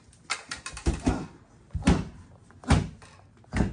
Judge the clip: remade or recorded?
recorded